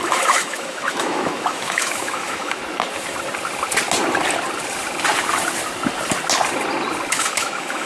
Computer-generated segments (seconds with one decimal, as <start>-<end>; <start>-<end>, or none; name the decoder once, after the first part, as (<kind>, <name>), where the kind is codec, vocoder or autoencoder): 0.0-2.6 (autoencoder, DAC-VAE); 7.1-7.9